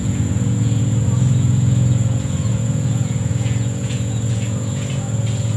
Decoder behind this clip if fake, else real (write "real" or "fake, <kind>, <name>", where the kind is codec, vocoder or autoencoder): fake, vocoder, Vocos